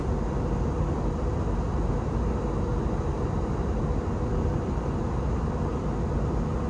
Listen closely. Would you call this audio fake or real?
real